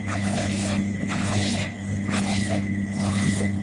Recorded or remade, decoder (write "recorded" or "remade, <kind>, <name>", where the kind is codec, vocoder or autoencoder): remade, codec, HILCodec